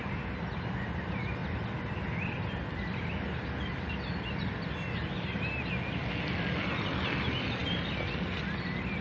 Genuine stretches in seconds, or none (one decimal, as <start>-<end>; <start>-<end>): 0.0-9.0